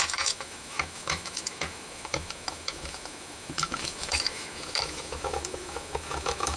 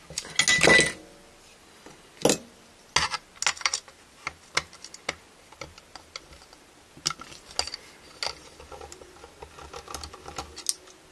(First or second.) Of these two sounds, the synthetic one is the first